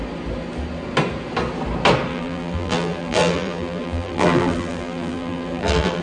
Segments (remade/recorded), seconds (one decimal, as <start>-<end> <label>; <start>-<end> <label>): 0.0-2.1 recorded; 2.1-6.0 remade